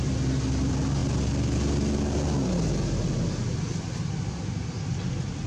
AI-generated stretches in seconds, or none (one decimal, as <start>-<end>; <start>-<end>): none

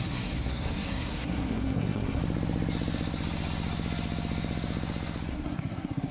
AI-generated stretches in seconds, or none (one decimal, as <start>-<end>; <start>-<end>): 0.0-2.2; 5.3-6.1

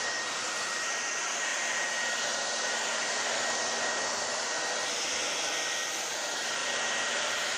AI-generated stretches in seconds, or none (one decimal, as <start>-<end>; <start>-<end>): 0.0-1.5; 6.1-7.6

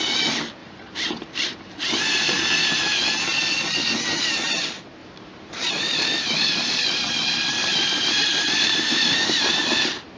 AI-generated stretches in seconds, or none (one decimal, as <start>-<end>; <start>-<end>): 0.6-2.4; 5.0-5.7; 7.6-9.6

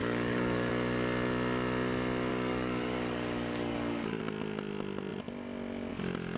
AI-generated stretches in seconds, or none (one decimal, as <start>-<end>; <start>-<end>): 0.0-0.7; 2.3-4.2

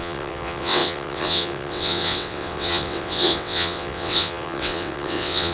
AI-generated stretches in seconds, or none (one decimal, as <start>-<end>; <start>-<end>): 0.0-5.5